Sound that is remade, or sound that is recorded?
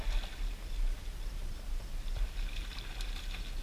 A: recorded